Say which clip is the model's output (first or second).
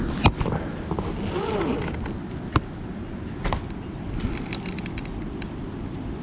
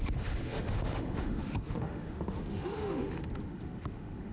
second